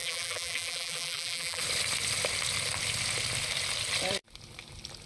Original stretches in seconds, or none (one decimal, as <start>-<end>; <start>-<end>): 1.6-5.1